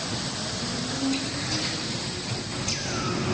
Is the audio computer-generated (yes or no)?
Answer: no